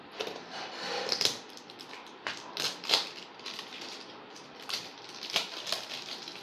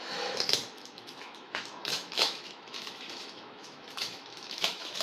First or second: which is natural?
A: first